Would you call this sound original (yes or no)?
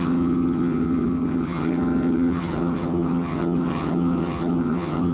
no